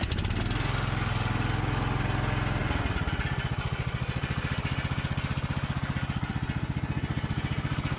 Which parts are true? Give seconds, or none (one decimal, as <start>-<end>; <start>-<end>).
0.0-8.0